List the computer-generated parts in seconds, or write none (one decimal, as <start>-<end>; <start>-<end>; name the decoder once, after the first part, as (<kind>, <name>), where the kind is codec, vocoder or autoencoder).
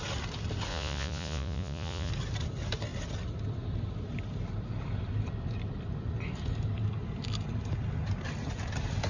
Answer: 0.7-2.1 (vocoder, Vocos)